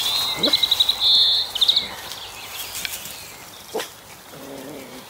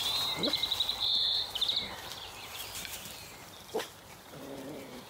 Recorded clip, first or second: first